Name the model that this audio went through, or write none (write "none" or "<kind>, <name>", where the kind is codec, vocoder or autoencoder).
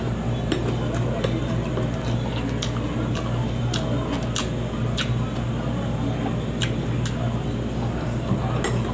none